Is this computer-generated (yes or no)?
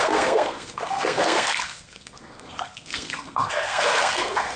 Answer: yes